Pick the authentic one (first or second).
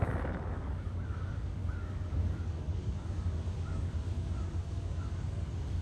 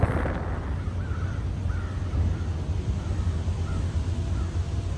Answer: second